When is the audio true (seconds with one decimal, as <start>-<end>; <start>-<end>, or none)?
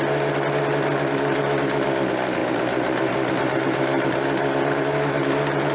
0.0-5.7